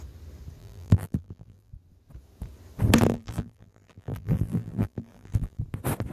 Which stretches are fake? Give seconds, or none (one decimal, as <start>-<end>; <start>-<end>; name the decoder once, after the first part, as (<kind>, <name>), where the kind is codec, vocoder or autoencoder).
0.6-1.7 (vocoder, BigVGAN v2); 3.1-5.6